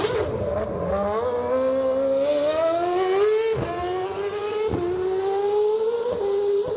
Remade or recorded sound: recorded